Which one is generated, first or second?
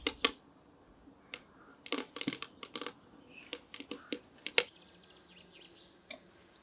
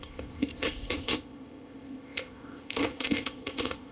second